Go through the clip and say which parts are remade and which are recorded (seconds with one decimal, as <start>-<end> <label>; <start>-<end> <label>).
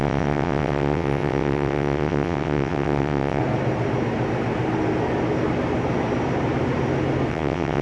0.0-3.4 remade; 3.4-7.3 recorded; 7.3-7.8 remade